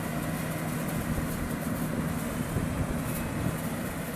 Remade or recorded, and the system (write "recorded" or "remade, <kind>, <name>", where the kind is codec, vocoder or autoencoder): recorded